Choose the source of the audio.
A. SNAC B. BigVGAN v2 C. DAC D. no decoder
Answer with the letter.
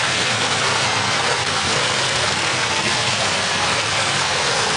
A